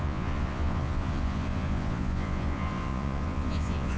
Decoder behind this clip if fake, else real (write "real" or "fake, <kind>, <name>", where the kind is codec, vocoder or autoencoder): fake, vocoder, Vocos